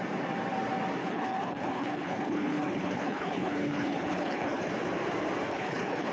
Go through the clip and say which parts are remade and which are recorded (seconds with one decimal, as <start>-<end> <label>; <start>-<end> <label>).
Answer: 0.0-1.0 recorded; 1.0-4.7 remade; 4.7-5.5 recorded; 5.5-6.1 remade